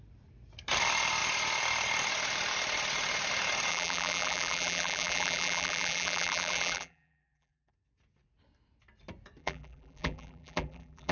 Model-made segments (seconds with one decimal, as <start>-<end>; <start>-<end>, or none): 3.7-7.7; 9.4-11.1